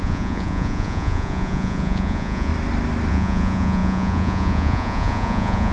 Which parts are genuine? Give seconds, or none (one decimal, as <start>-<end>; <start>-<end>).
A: 2.5-3.1